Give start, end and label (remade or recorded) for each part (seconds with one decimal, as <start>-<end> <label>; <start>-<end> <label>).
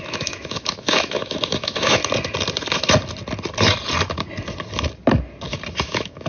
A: 0.0-2.0 remade; 2.0-5.8 recorded; 5.8-6.3 remade